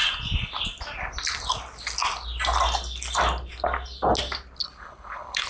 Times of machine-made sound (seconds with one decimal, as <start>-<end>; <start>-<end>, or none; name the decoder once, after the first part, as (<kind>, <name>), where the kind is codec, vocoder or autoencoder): 4.6-5.5 (codec, HILCodec)